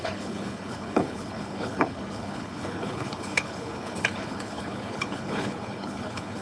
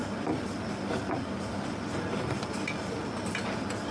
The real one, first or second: second